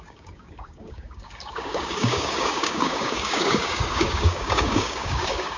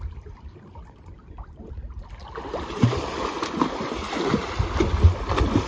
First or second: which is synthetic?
first